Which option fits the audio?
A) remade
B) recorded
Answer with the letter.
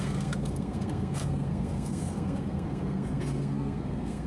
A